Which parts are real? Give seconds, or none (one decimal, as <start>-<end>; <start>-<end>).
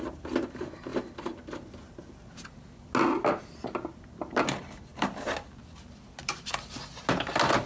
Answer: 0.0-7.7